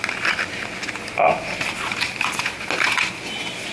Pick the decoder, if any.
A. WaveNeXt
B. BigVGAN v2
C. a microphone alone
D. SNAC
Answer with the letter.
C